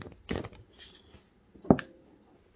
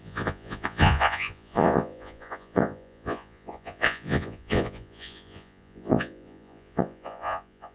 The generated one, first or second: second